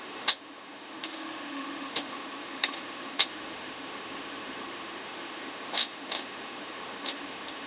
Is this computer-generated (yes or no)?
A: yes